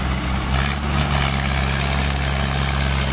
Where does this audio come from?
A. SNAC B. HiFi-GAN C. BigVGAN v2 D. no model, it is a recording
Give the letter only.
D